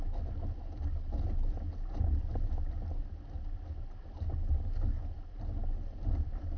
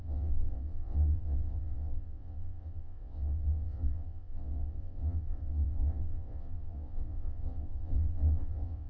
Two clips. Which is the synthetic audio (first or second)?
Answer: second